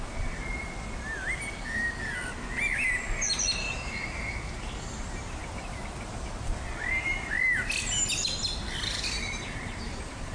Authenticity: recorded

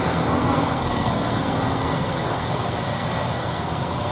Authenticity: remade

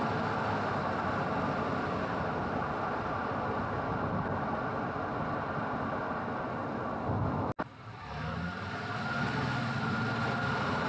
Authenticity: recorded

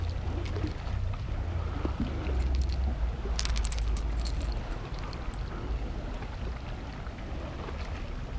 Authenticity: recorded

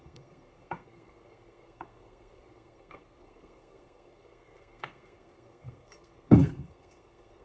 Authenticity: remade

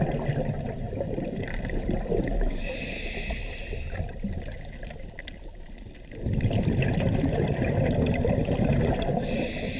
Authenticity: recorded